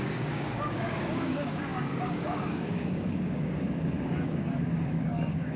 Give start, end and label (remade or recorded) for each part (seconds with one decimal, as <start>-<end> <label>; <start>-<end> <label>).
0.0-5.6 remade

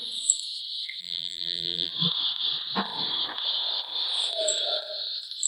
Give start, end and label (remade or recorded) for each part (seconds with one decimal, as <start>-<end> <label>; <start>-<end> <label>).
0.0-1.0 recorded; 1.0-1.9 remade; 1.9-5.5 recorded